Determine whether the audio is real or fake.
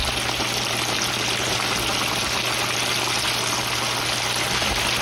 real